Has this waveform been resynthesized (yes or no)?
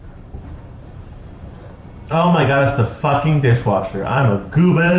yes